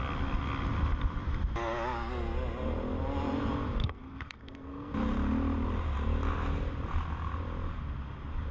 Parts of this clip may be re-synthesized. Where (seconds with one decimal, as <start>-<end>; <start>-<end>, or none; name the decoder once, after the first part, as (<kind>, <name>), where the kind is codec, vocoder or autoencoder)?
3.8-4.9 (codec, SNAC)